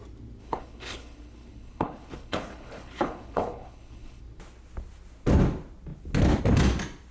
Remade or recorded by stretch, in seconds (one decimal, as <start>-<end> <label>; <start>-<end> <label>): 0.0-0.4 recorded; 0.4-4.2 remade; 4.2-7.1 recorded